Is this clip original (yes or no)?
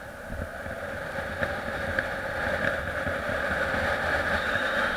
yes